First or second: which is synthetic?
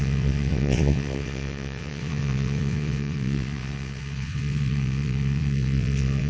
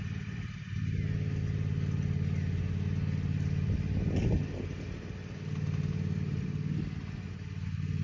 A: first